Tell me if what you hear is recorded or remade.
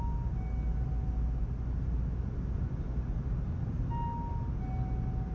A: recorded